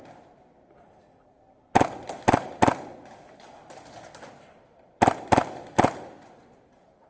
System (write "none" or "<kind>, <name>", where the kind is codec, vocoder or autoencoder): none